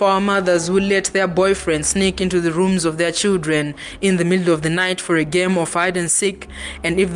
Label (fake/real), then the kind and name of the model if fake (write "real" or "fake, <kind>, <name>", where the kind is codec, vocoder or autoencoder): real